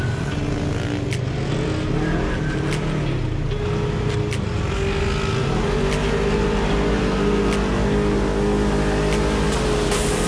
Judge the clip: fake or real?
real